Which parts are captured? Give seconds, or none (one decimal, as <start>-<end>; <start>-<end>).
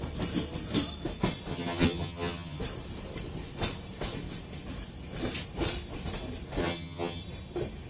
0.0-1.5; 2.6-6.6; 7.2-7.9